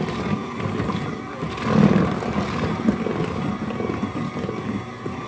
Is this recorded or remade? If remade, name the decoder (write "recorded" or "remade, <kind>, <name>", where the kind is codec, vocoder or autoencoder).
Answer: recorded